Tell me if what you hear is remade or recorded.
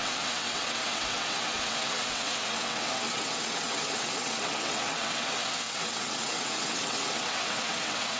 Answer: remade